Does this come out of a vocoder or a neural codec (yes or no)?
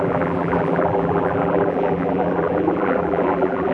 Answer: yes